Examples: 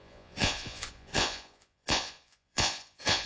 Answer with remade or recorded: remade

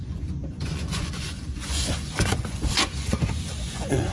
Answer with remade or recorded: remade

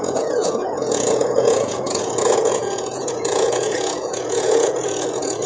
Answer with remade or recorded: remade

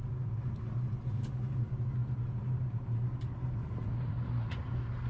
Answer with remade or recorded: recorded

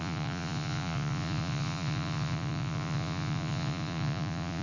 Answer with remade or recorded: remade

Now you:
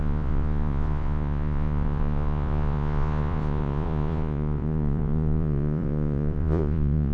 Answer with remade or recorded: remade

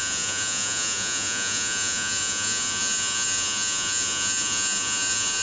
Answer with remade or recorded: remade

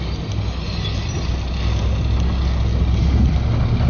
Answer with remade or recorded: recorded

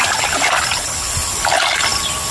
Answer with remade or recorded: recorded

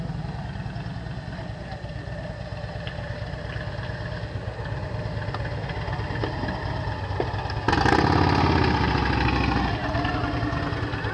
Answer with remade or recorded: recorded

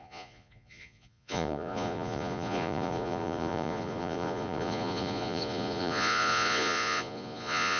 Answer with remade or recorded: remade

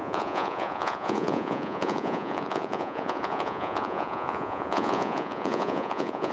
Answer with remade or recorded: remade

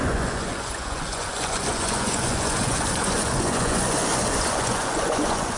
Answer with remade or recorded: remade